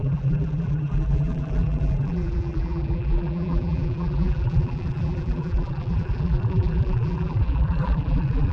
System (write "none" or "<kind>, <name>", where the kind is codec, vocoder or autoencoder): vocoder, BigVGAN v2